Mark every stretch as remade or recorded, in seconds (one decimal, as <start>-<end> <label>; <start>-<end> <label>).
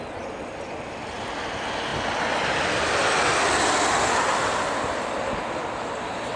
0.0-6.4 recorded